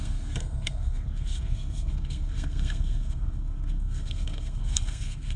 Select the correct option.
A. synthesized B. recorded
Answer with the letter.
A